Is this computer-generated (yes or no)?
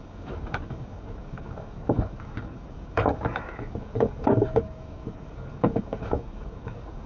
yes